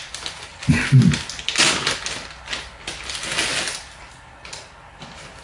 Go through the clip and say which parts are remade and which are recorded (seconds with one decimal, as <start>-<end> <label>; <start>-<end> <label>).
0.0-5.4 recorded